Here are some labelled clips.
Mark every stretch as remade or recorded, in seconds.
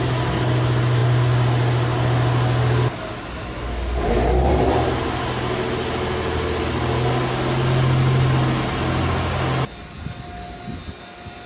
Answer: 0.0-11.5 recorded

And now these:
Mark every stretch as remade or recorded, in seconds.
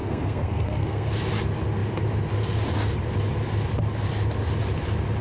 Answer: 0.0-1.1 remade; 1.1-5.2 recorded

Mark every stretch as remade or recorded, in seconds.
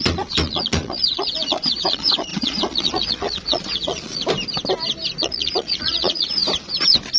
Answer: 0.0-4.2 remade; 4.2-5.2 recorded; 5.2-6.4 remade; 6.4-7.2 recorded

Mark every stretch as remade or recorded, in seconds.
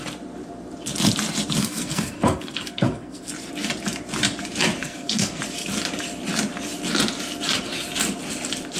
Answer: 0.0-1.6 recorded; 1.6-3.3 remade; 3.3-4.8 recorded; 4.8-5.4 remade; 5.4-8.8 recorded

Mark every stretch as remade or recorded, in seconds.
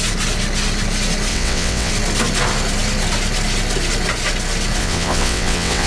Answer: 0.0-1.3 recorded; 1.3-1.9 remade; 1.9-4.8 recorded; 4.8-5.9 remade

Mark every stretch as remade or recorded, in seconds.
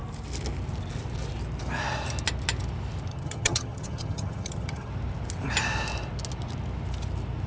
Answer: 0.0-3.1 recorded; 3.1-4.9 remade; 4.9-7.5 recorded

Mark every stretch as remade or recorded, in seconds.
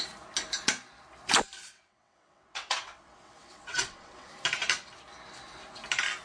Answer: 0.0-1.6 recorded; 1.6-4.3 remade; 4.3-6.2 recorded